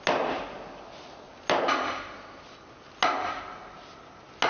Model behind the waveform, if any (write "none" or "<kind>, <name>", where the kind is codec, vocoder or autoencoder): none